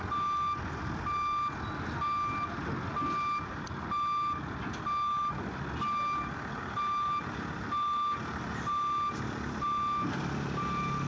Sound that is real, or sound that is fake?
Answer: real